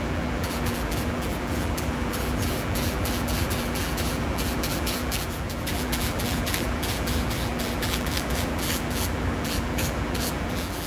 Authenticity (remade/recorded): remade